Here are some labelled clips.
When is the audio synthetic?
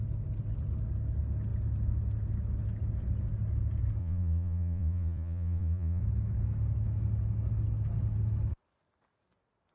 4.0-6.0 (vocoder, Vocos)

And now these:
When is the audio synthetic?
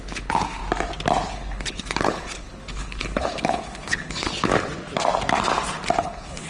0.0-0.6 (codec, HILCodec); 1.3-4.5; 6.0-6.5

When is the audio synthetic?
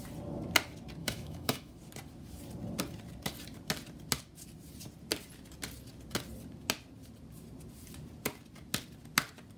1.0-1.7 (autoencoder, DAC-VAE)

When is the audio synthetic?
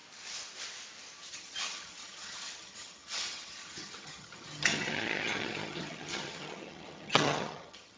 1.3-8.0 (vocoder, HiFi-GAN)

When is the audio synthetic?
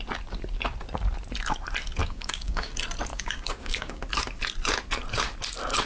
2.0-2.7 (codec, DAC); 3.1-4.0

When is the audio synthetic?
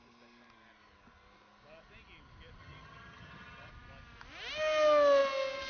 2.6-3.7 (vocoder, HiFi-GAN)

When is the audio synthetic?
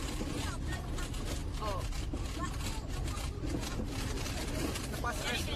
none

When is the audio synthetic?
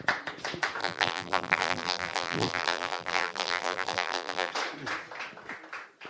0.8-4.5 (vocoder, BigVGAN v2)